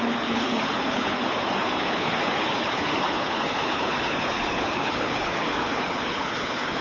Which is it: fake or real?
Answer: fake